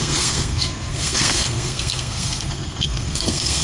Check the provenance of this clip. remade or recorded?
remade